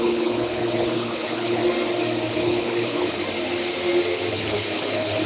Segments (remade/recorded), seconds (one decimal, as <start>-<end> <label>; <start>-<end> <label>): 0.0-1.6 remade; 1.6-2.3 recorded; 2.3-3.2 remade; 3.2-4.3 recorded; 4.3-5.3 remade